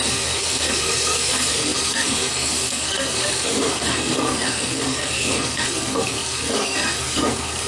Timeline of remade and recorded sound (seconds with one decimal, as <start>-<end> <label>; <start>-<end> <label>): 0.0-7.7 remade